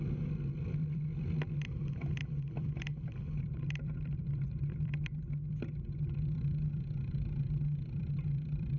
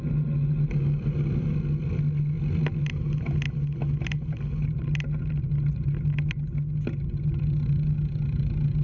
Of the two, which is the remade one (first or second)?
first